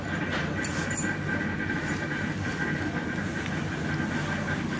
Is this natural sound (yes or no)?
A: yes